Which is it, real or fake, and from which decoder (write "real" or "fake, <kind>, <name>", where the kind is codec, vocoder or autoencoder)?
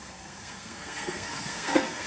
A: fake, codec, SNAC